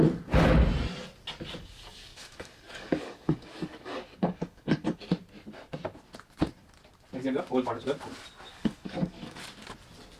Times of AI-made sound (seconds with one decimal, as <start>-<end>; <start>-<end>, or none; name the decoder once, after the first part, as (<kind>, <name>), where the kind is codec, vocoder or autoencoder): 1.6-5.1 (codec, DAC); 8.5-9.4